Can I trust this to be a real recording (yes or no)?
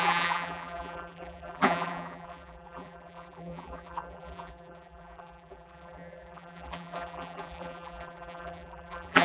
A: no